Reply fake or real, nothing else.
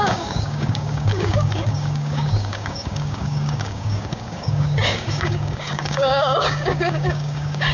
fake